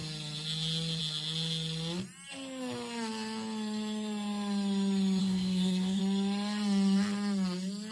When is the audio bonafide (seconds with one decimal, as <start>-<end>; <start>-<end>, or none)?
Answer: 0.0-5.2; 6.0-7.9